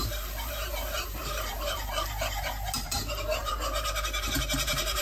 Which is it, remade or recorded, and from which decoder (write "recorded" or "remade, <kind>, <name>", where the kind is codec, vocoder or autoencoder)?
remade, vocoder, BigVGAN v2